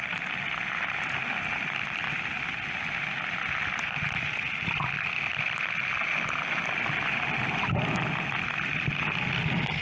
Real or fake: real